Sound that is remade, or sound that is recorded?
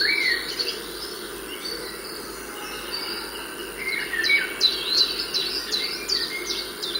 recorded